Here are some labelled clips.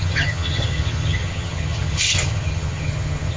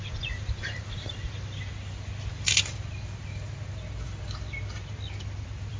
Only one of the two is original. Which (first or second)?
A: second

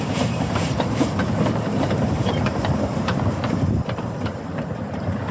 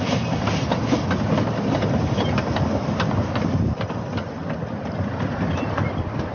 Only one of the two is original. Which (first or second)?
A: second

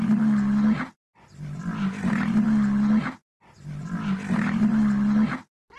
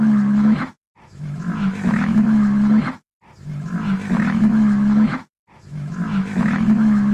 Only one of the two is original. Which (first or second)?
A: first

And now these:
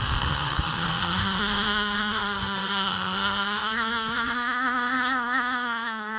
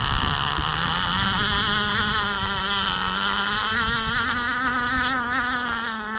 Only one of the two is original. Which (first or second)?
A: second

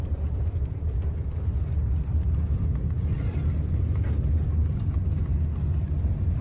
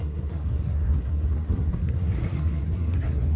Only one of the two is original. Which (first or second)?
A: first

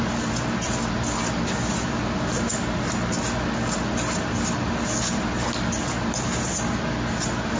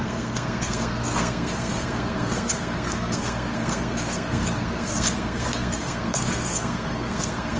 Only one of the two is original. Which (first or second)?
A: first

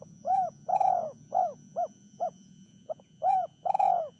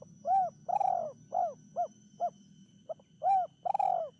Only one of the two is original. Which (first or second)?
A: second